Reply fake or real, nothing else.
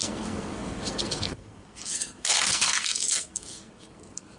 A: fake